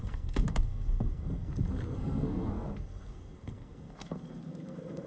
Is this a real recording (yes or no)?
no